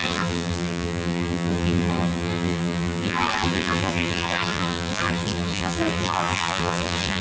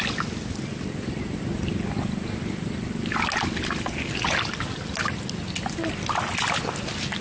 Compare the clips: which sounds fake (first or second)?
first